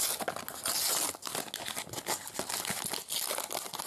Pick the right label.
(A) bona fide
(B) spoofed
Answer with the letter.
A